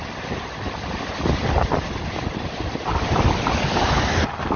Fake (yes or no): no